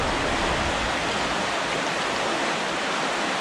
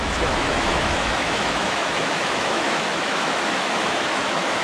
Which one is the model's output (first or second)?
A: second